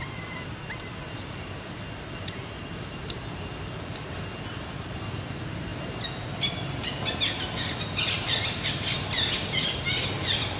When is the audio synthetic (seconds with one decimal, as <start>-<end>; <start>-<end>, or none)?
none